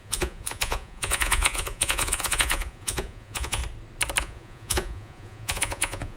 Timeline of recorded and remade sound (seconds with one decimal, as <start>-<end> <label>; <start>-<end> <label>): 0.0-3.6 remade; 3.6-4.2 recorded; 4.2-6.2 remade